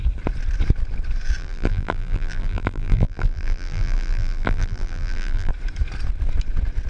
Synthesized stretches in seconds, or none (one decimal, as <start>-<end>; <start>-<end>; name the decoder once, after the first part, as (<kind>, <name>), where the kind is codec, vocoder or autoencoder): 1.4-5.5 (vocoder, BigVGAN v2)